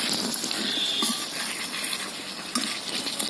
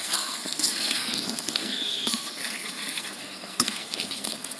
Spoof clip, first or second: second